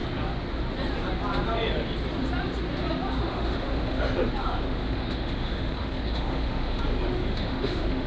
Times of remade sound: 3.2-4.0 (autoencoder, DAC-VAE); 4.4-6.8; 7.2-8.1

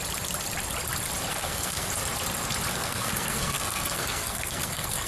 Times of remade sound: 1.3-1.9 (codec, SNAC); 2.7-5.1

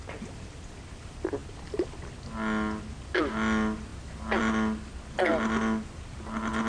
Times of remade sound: none

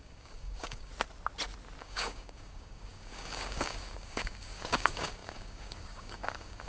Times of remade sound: 0.0-0.9 (codec, DAC); 1.8-6.7

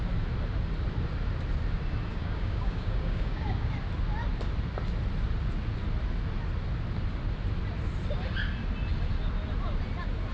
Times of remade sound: 2.1-3.7 (codec, DAC)